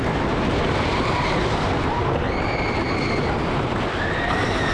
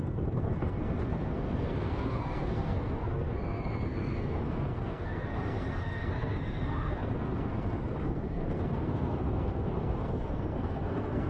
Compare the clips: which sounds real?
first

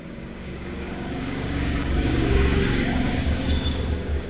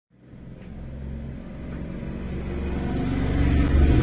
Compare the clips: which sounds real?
second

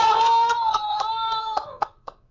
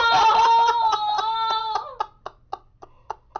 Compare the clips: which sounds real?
second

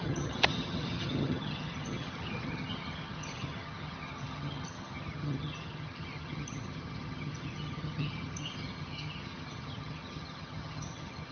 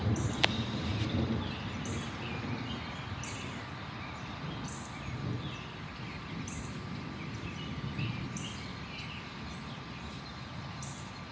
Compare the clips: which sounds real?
second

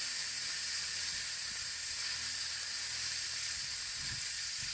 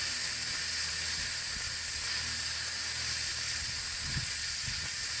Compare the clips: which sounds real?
second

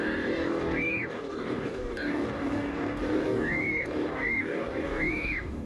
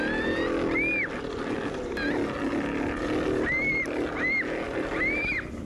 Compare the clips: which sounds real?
second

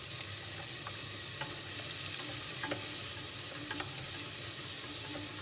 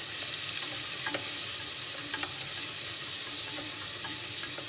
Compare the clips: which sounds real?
first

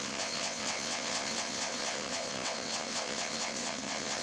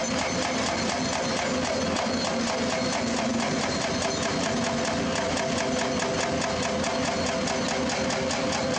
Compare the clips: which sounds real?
second